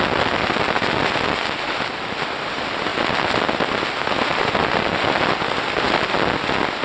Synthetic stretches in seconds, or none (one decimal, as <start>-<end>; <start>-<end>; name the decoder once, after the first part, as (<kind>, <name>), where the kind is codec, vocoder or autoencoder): none